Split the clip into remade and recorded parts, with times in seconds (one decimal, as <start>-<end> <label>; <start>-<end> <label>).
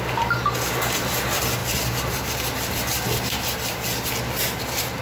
0.0-5.0 recorded